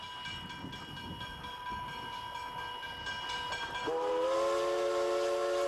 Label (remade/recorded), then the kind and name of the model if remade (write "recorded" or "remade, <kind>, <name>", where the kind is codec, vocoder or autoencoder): recorded